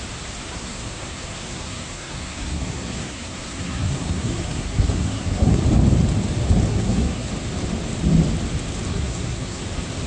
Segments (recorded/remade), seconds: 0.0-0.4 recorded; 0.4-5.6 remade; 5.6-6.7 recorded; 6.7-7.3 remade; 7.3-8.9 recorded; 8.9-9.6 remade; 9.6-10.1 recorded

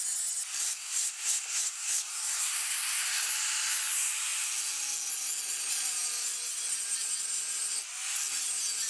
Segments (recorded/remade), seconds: 0.0-0.6 recorded; 0.6-3.3 remade; 3.3-8.9 recorded